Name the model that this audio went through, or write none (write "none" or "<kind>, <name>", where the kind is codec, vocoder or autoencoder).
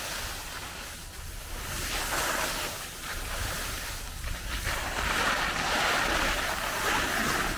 none